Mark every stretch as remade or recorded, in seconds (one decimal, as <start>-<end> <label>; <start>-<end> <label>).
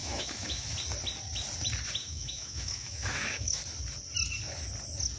0.0-0.7 remade; 0.7-2.0 recorded; 2.0-3.6 remade; 3.6-5.2 recorded